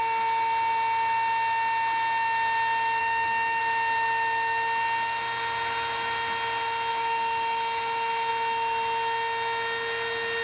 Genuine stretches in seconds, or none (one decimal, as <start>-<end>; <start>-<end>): 0.0-3.0; 3.6-6.9; 8.3-10.4